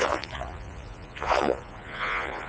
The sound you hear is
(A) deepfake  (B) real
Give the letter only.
A